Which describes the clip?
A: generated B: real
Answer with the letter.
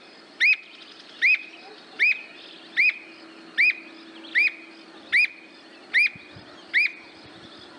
B